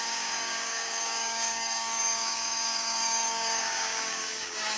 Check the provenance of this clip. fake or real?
fake